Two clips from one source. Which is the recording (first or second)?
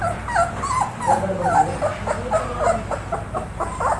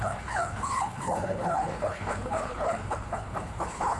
first